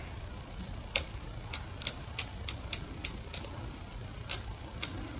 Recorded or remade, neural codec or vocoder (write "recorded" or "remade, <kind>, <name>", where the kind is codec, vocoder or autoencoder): recorded